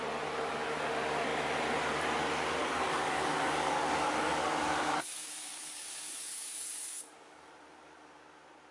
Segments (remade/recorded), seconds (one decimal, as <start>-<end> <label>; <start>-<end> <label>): 0.0-2.6 recorded; 2.6-7.5 remade; 7.5-8.7 recorded